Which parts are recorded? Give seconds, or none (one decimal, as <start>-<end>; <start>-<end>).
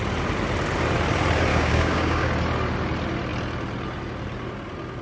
0.0-1.5; 2.3-5.0